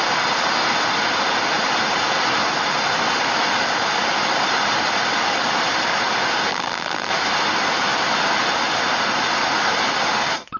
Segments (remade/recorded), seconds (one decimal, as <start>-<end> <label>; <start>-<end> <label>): 0.0-6.5 recorded; 6.5-7.1 remade; 7.1-10.6 recorded

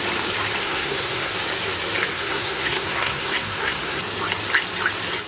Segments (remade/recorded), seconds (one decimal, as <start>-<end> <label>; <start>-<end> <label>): 0.0-0.6 recorded; 0.6-1.3 remade; 1.3-2.1 recorded; 2.1-4.0 remade; 4.0-5.3 recorded

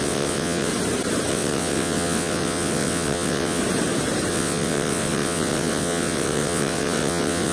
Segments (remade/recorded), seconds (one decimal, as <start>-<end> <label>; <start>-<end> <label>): 0.0-0.7 remade; 0.7-1.3 recorded; 1.3-3.6 remade; 3.6-4.3 recorded; 4.3-7.5 remade